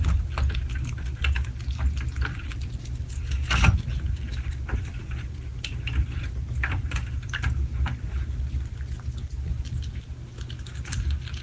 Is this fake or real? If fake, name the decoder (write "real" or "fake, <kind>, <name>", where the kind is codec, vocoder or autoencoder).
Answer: real